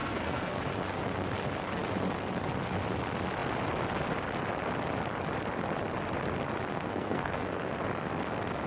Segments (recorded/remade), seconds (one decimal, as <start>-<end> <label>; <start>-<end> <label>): 0.0-0.6 remade; 0.6-6.7 recorded; 6.7-7.8 remade; 7.8-8.7 recorded